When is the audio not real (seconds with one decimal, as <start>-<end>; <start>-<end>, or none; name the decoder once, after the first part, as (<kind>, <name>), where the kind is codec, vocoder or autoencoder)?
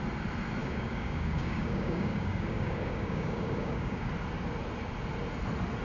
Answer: 0.6-4.1 (codec, DAC)